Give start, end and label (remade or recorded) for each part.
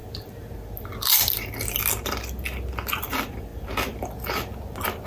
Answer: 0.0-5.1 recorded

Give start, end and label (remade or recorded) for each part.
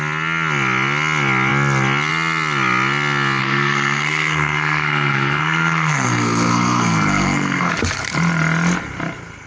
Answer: 0.0-3.4 recorded; 3.4-7.7 remade; 7.7-9.5 recorded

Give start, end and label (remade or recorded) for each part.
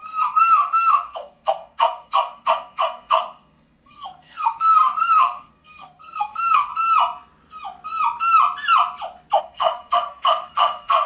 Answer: 0.0-6.7 remade; 6.7-9.4 recorded; 9.4-11.1 remade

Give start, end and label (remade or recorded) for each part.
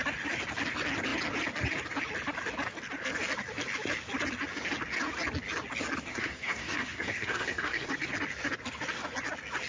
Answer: 0.0-6.1 recorded; 6.1-7.9 remade; 7.9-9.7 recorded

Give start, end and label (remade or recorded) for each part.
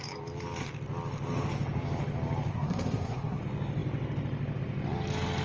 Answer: 0.0-2.5 recorded; 2.5-3.4 remade; 3.4-5.4 recorded